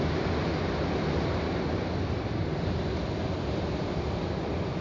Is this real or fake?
real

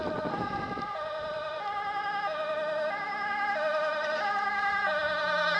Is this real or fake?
real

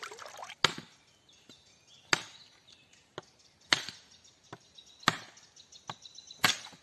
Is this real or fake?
real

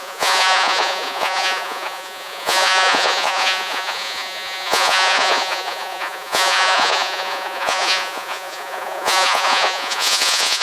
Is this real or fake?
fake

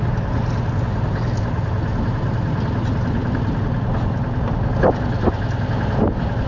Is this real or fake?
real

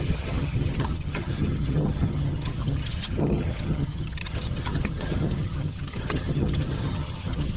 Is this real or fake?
fake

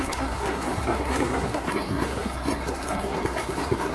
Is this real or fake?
fake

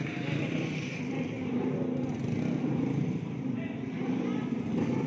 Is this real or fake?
real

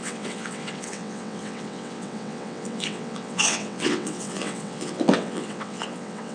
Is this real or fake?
fake